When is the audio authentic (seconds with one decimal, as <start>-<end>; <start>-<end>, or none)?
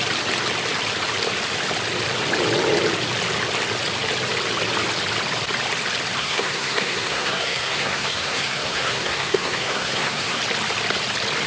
0.0-6.2; 10.4-11.5